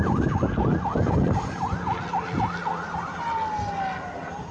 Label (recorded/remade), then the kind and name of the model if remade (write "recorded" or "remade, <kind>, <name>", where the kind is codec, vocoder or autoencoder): recorded